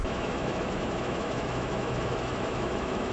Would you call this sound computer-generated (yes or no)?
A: yes